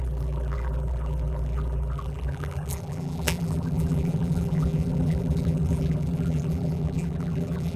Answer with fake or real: fake